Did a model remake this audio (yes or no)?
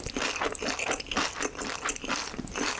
no